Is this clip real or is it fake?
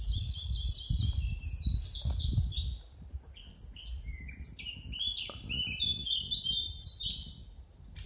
fake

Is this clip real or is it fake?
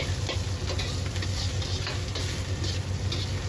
real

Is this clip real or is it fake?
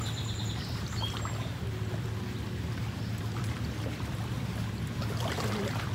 real